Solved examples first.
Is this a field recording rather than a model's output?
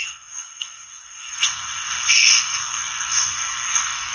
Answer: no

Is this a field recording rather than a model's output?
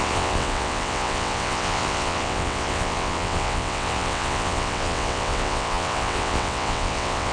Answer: no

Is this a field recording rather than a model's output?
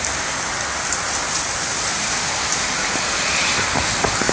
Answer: yes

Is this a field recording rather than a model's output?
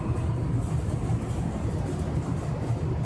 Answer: yes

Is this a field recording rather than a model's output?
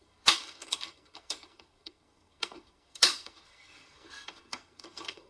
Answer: no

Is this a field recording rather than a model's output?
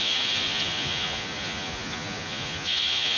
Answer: no